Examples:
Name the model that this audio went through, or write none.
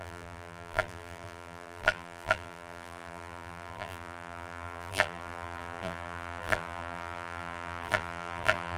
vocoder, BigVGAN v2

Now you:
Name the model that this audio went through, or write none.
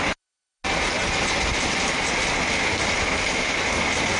none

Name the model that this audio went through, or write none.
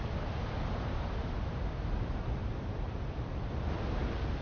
vocoder, BigVGAN v2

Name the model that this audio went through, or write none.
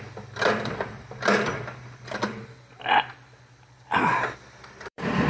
vocoder, BigVGAN v2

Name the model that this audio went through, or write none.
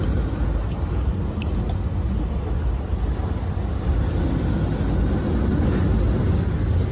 none